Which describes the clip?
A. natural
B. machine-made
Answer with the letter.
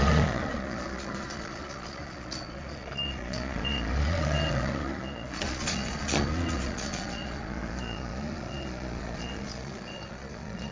B